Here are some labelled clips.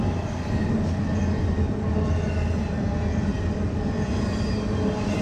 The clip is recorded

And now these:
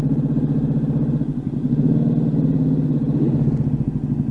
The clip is recorded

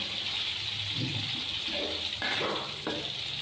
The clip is recorded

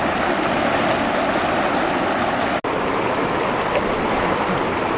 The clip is recorded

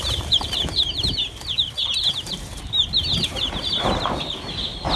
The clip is remade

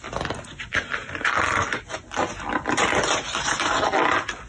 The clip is recorded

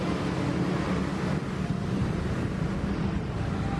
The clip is recorded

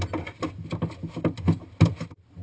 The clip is recorded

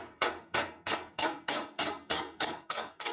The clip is remade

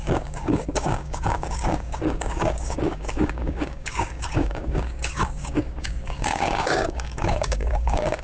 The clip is remade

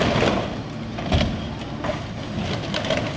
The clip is recorded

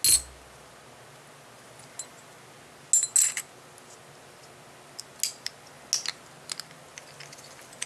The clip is recorded